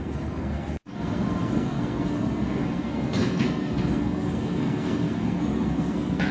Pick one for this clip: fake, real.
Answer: fake